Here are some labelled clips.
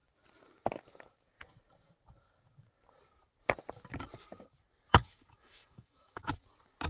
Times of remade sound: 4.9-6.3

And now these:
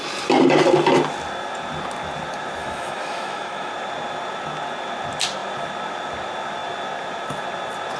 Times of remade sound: 2.6-3.7

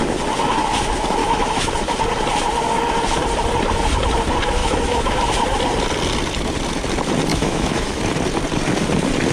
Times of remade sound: 1.2-1.7; 4.6-5.2; 7.3-8.0

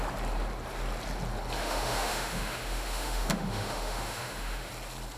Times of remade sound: 1.6-4.7

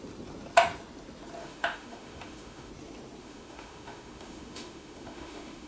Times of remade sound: 1.4-2.7; 3.2-5.7

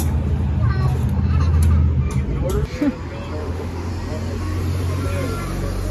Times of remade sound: 3.4-3.9

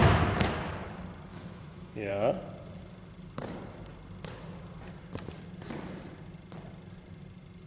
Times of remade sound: 1.3-2.1

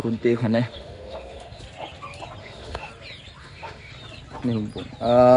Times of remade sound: 0.0-1.6; 2.4-2.9; 3.4-3.9